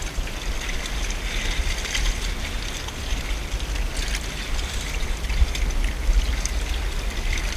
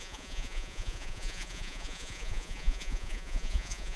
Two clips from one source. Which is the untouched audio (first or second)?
first